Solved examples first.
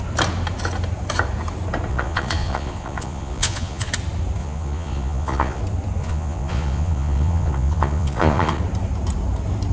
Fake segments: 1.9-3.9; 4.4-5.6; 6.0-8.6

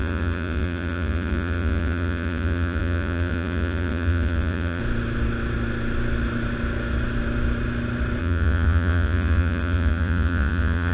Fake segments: 0.0-4.8; 8.2-10.9

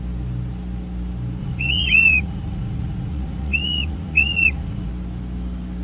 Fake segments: 1.4-4.9

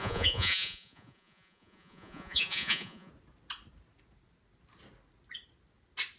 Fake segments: 0.0-3.1

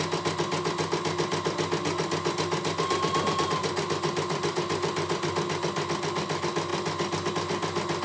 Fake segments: none

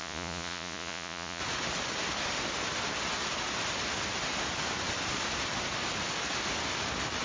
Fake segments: 0.0-1.4

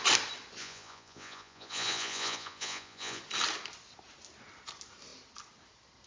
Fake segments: 0.6-3.2

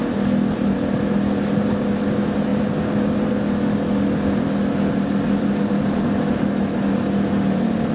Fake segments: none